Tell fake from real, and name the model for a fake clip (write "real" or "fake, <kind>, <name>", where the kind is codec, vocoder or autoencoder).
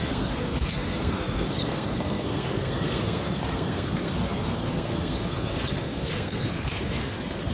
fake, codec, SNAC